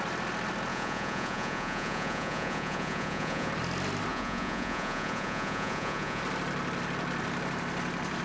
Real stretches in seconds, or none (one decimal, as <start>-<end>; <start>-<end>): 0.0-0.7; 3.5-4.1; 6.2-8.2

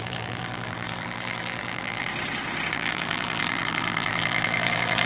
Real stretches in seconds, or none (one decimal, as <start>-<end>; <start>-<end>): 2.1-2.7

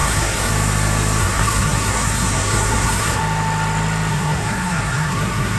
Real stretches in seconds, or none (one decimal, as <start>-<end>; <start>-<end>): 0.5-1.2; 3.2-4.1

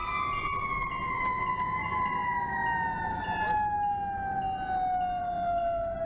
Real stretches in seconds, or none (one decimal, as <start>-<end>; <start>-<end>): 0.0-6.1

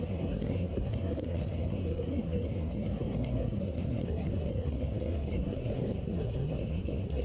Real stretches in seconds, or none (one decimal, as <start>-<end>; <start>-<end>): none

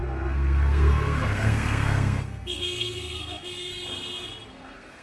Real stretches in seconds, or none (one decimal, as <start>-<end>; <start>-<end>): 3.7-4.5

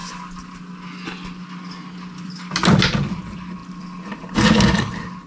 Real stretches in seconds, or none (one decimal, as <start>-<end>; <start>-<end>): 0.0-5.3